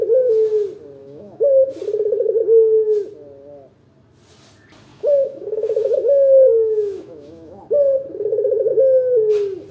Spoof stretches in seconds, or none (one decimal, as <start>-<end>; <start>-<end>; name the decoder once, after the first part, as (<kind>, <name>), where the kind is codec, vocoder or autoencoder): 1.0-1.7 (autoencoder, DAC-VAE); 4.9-7.6; 8.3-8.8